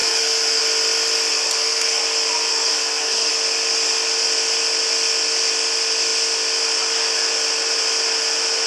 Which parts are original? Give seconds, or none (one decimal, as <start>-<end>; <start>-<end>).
0.6-1.3; 2.0-2.5; 3.3-8.7

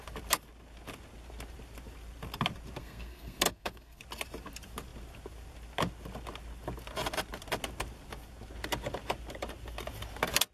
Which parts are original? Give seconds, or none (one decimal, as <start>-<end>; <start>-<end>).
0.0-2.8; 4.0-10.5

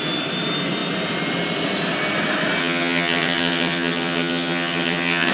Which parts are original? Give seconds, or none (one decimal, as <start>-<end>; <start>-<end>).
0.0-2.6

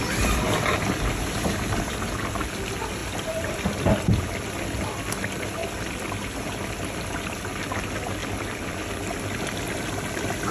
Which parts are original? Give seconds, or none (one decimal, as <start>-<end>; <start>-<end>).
0.0-10.5

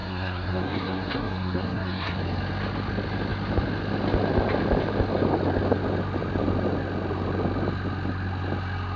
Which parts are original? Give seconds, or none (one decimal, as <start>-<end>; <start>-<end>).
2.2-9.0

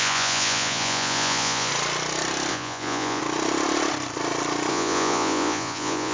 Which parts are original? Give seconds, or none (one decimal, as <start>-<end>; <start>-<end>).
1.7-2.5; 3.2-4.7

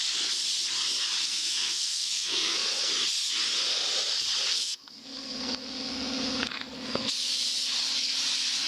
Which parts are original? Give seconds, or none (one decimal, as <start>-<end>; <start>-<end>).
0.0-1.2; 2.9-4.5; 7.1-8.7

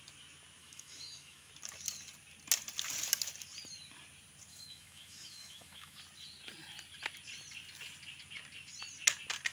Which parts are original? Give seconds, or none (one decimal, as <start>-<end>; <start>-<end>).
0.0-0.6; 1.5-4.5; 6.0-9.5